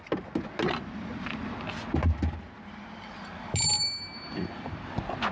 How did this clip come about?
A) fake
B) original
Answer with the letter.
B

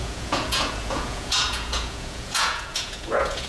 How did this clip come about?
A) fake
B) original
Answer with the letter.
A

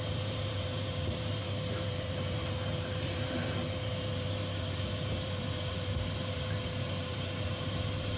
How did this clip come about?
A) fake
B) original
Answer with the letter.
A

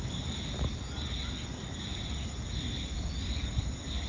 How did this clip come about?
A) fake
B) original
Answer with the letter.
B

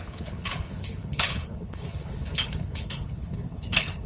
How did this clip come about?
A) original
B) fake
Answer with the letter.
B